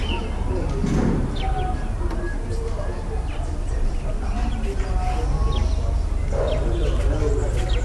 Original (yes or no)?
yes